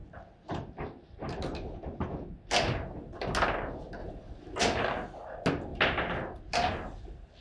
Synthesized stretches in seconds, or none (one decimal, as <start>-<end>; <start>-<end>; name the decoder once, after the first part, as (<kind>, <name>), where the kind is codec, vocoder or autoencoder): none